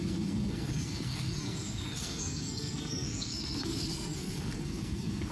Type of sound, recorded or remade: remade